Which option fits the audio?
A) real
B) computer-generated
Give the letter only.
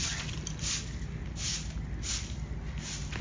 A